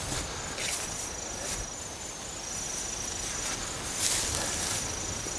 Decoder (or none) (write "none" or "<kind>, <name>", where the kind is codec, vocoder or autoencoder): none